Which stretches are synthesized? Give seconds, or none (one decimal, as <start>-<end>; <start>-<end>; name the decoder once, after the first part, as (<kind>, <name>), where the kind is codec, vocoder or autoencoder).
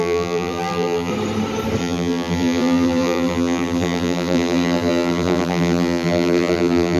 0.0-1.1 (vocoder, BigVGAN v2); 1.8-7.0